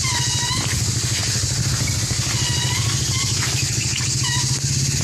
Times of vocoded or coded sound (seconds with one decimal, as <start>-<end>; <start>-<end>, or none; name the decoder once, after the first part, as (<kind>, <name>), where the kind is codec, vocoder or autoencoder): 3.6-4.2 (codec, DAC)